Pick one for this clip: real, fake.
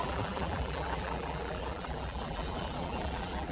fake